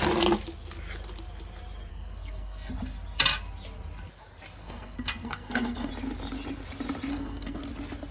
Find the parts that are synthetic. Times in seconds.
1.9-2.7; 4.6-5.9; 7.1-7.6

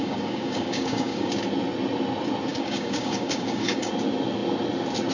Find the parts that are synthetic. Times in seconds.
0.0-1.3; 2.5-3.9

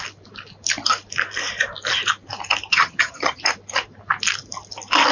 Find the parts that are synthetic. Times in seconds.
2.7-3.4

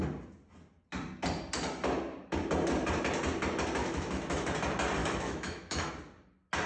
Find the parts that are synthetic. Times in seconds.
3.8-4.5; 5.0-5.9

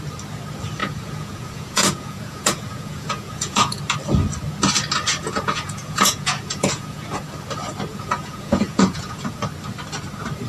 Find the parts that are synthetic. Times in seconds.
0.8-3.8; 5.2-7.2; 7.9-9.4

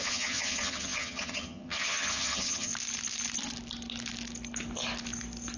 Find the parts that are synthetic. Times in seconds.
0.0-2.7